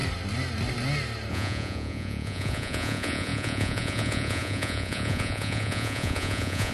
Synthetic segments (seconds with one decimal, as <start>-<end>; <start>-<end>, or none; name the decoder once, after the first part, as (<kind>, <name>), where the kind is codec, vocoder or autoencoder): 1.3-6.7 (vocoder, Vocos)